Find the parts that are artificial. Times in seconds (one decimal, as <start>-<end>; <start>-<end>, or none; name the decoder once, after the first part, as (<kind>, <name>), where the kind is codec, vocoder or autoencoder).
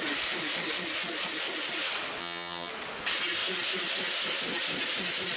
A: 2.2-2.7 (vocoder, HiFi-GAN)